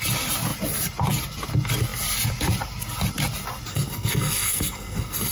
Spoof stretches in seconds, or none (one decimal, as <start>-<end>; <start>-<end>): 3.7-5.3